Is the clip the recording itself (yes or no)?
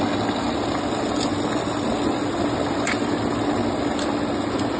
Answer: yes